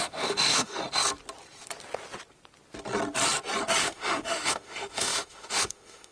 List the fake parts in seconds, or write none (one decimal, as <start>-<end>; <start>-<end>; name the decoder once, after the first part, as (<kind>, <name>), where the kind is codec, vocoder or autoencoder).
0.0-0.8 (autoencoder, DAC-VAE); 3.8-6.1

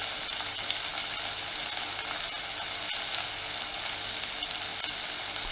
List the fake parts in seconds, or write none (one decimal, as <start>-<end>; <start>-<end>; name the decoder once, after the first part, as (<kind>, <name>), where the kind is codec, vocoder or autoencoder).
none

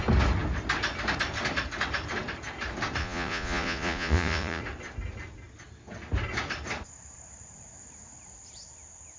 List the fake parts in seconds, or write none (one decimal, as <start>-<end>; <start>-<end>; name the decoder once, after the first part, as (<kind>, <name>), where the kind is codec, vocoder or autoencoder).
3.0-4.6 (vocoder, Vocos)